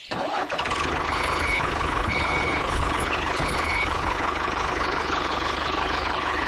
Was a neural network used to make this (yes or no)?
yes